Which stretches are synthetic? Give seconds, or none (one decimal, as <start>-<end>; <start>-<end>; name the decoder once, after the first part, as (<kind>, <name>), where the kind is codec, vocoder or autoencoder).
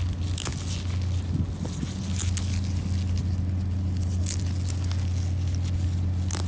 none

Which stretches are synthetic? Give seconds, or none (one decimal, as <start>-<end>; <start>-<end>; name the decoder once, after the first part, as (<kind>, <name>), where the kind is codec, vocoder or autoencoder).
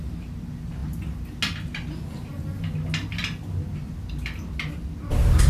none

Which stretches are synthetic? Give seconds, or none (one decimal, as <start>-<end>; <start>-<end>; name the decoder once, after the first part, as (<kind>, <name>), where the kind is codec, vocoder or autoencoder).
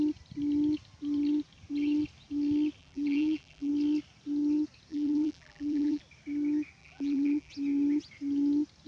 2.8-3.7 (vocoder, BigVGAN v2); 4.9-6.0; 6.8-7.5